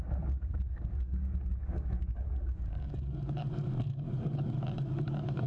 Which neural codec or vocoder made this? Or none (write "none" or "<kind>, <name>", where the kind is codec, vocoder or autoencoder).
codec, DAC